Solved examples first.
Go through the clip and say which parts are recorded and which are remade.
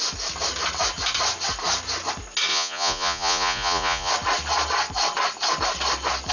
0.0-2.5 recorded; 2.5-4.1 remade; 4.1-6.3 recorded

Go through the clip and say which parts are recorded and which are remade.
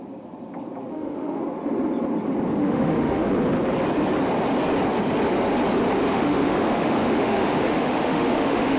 0.0-0.9 recorded; 0.9-1.4 remade; 1.4-2.6 recorded; 2.6-3.3 remade; 3.3-6.1 recorded; 6.1-8.8 remade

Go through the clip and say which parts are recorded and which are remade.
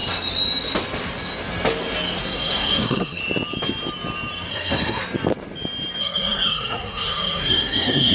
0.0-2.2 recorded; 2.2-3.2 remade; 3.2-4.5 recorded; 4.5-5.0 remade; 5.0-6.0 recorded; 6.0-8.1 remade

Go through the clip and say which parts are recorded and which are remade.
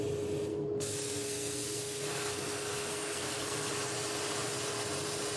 0.0-0.5 recorded; 0.5-3.7 remade; 3.7-5.4 recorded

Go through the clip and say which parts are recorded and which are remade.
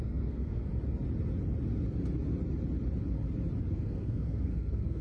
0.0-0.7 remade; 0.7-3.7 recorded; 3.7-5.0 remade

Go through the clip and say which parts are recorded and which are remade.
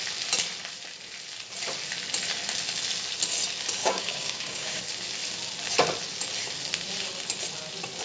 0.0-3.8 recorded; 3.8-4.8 remade; 4.8-8.0 recorded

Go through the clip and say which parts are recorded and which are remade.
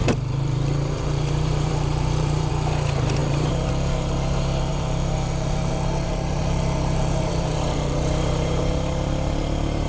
0.0-2.5 remade; 2.5-3.2 recorded; 3.2-3.7 remade; 3.7-4.7 recorded; 4.7-8.6 remade; 8.6-9.9 recorded